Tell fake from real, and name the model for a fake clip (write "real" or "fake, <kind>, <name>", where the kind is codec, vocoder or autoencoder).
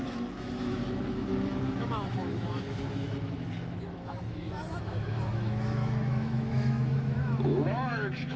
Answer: fake, autoencoder, DAC-VAE